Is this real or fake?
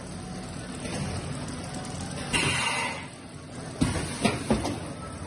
real